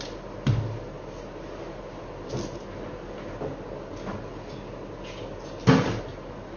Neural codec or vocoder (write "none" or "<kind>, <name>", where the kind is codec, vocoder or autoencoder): none